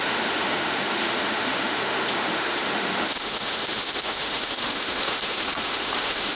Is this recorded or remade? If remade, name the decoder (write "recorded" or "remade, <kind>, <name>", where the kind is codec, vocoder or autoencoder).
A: remade, autoencoder, DAC-VAE